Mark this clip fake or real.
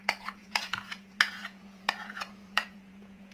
fake